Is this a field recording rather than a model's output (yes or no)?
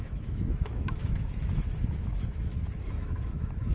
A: no